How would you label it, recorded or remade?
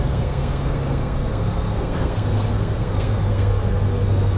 remade